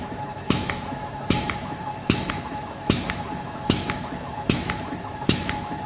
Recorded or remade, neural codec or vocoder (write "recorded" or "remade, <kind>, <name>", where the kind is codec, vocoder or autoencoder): remade, autoencoder, DAC-VAE